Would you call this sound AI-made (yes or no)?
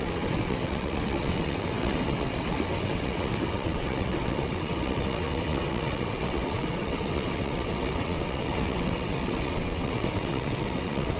yes